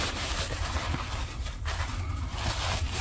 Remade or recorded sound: remade